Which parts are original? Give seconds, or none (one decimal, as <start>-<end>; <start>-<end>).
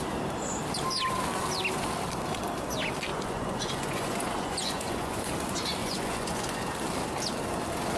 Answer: 0.0-3.1; 5.3-5.8; 6.6-8.0